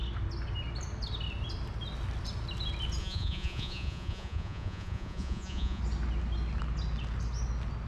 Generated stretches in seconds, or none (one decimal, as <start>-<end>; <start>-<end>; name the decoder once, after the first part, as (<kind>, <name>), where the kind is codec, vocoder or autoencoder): 3.0-5.8 (vocoder, Vocos)